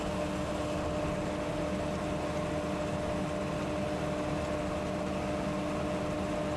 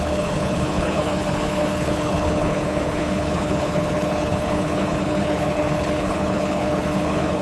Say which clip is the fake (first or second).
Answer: second